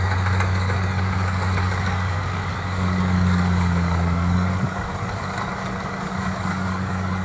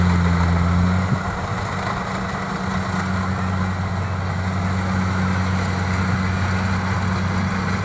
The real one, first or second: second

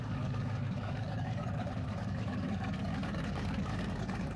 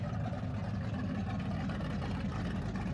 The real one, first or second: second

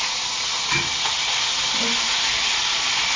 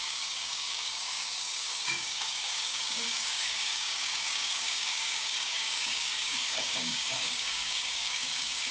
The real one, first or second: first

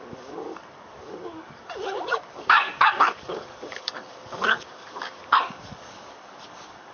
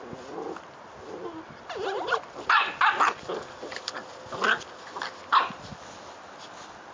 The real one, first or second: second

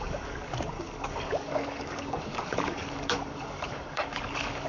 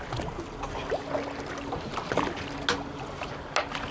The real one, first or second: second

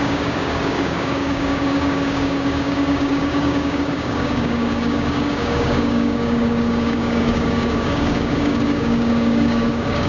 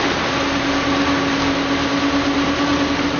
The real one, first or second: second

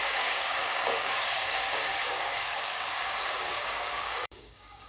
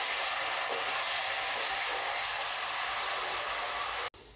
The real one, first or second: second